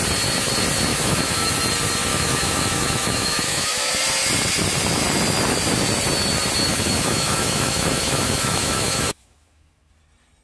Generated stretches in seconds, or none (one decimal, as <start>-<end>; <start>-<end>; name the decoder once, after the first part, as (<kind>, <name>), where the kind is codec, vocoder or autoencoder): 0.9-1.5 (autoencoder, DAC-VAE); 2.1-3.9; 6.7-9.9